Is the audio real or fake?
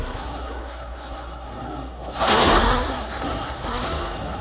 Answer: fake